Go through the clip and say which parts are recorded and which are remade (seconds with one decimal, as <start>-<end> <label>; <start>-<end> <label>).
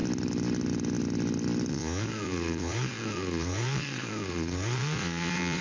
0.0-1.7 recorded; 1.7-5.6 remade